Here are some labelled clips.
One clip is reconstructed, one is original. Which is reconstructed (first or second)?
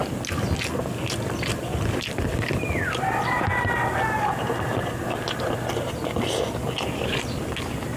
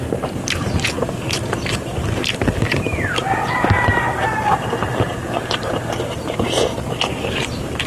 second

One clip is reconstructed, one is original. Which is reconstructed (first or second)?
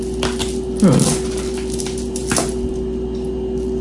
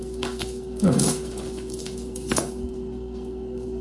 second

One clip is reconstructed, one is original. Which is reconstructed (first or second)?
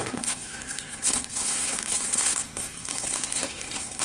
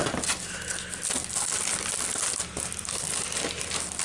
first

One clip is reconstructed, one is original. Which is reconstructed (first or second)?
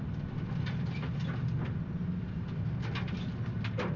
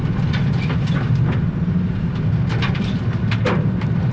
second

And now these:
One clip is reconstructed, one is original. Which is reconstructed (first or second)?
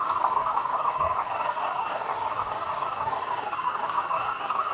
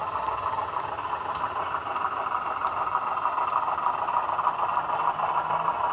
first